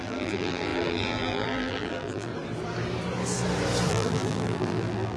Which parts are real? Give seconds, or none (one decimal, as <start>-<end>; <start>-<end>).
2.3-3.9